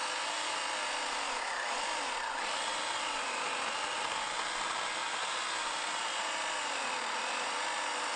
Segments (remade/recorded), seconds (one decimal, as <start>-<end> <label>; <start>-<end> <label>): 0.0-8.2 recorded